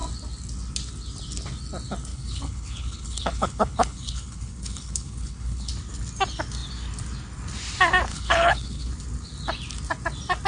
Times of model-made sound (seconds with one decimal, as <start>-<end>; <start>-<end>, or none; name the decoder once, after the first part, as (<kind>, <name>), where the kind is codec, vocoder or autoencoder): 2.1-5.7 (codec, HILCodec); 8.1-8.9